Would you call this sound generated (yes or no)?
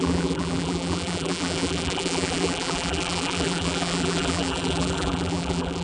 yes